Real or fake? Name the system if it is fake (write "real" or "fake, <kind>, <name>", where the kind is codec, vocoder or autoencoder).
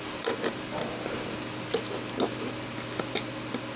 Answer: real